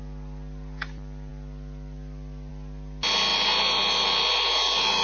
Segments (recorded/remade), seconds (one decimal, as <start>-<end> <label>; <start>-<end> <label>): 0.0-5.0 recorded